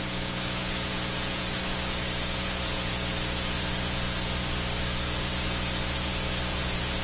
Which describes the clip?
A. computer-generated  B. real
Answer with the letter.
A